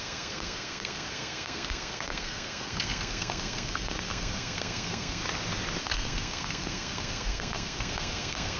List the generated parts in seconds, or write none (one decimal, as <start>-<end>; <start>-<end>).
0.0-5.2; 5.8-8.6